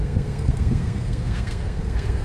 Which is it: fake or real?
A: fake